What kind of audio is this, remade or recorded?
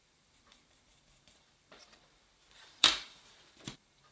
remade